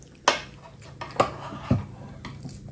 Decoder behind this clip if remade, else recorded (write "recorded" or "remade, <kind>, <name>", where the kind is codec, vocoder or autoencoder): recorded